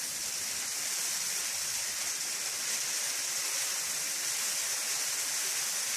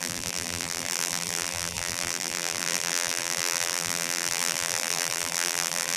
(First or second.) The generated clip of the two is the second